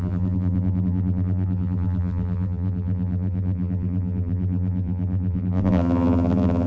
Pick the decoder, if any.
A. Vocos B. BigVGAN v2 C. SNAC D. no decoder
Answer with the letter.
B